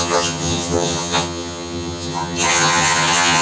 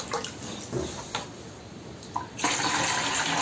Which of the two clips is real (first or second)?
second